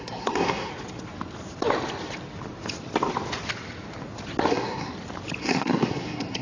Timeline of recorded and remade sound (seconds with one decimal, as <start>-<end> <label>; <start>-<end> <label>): 0.0-0.7 remade; 0.7-4.5 recorded; 4.5-4.9 remade; 4.9-5.4 recorded; 5.4-6.4 remade